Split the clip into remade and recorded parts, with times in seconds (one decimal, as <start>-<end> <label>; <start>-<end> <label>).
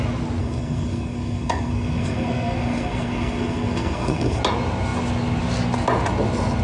0.0-0.4 recorded; 0.4-4.4 remade; 4.4-6.6 recorded